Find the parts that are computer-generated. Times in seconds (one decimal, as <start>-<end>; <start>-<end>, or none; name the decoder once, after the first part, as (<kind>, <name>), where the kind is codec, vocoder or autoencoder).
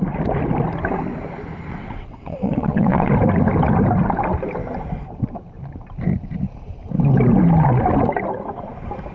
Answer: 1.7-3.1 (vocoder, WaveNeXt)